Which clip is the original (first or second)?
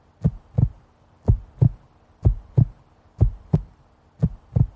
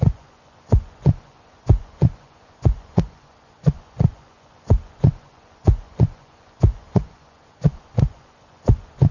first